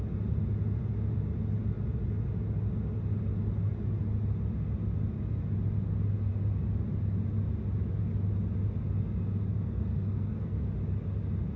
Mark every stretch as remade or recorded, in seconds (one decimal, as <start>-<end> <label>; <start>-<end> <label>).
0.0-9.5 recorded; 9.5-10.7 remade; 10.7-11.6 recorded